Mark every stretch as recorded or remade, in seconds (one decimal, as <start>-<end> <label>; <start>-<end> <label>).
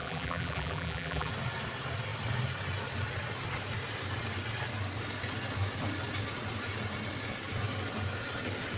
0.0-1.3 remade; 1.3-8.8 recorded